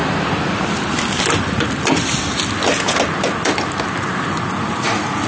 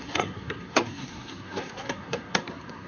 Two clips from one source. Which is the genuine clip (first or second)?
first